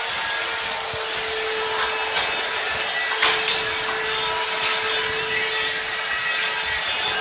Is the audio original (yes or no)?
no